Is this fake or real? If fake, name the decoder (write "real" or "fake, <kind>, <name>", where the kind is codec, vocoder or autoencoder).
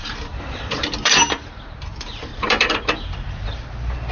fake, vocoder, BigVGAN v2